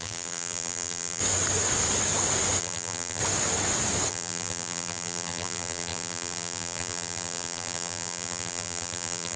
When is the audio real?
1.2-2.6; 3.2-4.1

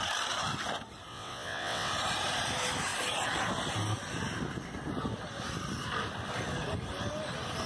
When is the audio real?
0.0-1.1; 1.9-7.7